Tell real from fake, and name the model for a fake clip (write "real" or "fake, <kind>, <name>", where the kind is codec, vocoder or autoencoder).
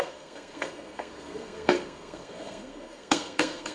fake, codec, SNAC